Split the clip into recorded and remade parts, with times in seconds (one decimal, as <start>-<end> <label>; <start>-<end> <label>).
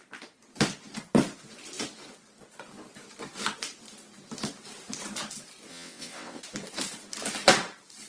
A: 0.0-5.7 recorded; 5.7-6.4 remade; 6.4-8.1 recorded